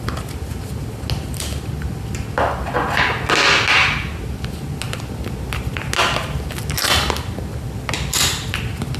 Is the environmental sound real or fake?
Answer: real